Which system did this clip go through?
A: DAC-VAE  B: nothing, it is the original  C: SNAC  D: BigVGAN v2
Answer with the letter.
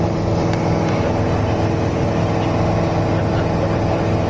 B